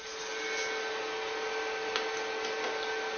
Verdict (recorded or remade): recorded